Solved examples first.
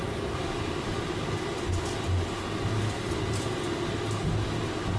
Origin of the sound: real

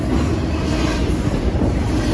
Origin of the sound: real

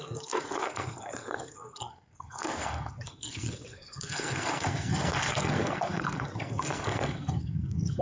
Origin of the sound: fake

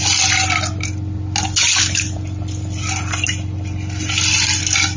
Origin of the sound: real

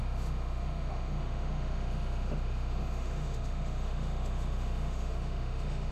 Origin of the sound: fake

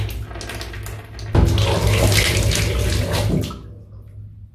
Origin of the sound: real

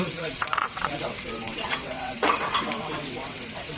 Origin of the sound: fake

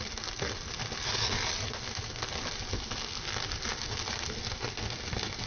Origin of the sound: real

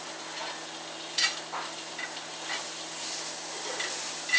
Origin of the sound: real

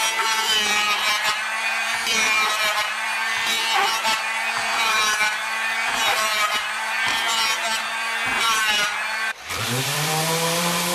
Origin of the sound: fake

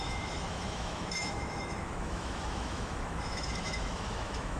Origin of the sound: fake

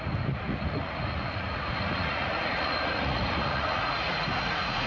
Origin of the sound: fake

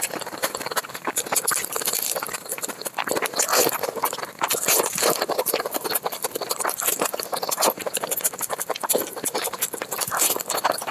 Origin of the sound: real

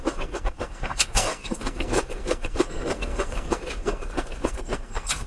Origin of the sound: fake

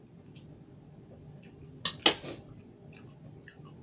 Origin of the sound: real